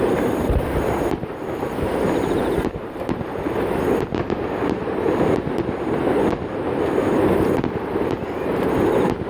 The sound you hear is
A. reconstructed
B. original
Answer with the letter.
A